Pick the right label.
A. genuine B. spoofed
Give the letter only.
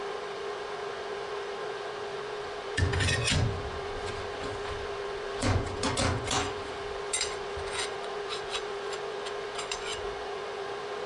B